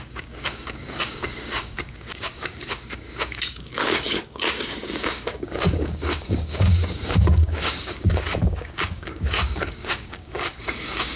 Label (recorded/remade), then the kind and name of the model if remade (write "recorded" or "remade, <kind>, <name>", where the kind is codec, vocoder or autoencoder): remade, codec, DAC